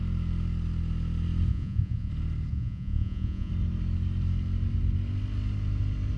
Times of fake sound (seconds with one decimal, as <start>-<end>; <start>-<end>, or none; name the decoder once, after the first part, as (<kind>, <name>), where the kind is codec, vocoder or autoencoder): 1.5-2.1 (vocoder, Vocos); 2.5-3.5